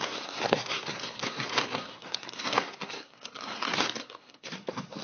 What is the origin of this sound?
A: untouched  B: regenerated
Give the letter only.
B